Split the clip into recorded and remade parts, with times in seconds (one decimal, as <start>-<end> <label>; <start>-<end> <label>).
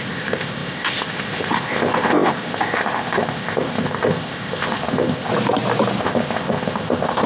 0.0-5.3 remade; 5.3-6.0 recorded; 6.0-7.3 remade